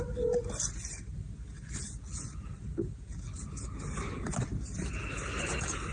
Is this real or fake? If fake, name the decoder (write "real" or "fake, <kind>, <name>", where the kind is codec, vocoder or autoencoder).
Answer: real